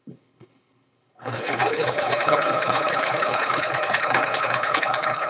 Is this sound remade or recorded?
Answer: remade